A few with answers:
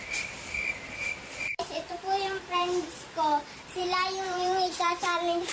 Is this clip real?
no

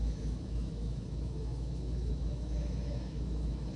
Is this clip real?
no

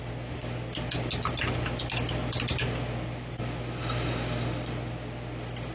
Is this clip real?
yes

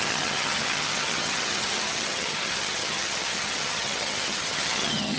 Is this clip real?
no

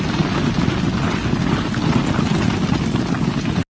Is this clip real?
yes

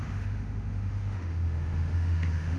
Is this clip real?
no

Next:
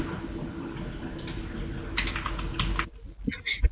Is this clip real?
yes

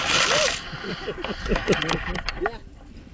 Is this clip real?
yes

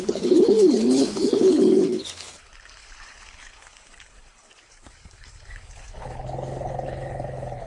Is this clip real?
no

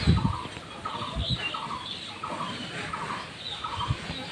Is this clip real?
yes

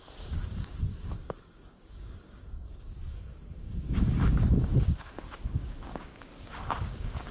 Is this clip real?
no